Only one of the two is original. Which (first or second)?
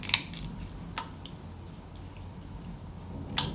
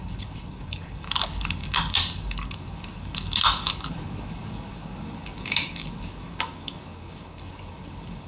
first